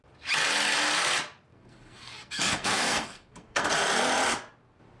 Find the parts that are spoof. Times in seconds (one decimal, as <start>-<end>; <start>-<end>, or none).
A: 1.5-3.7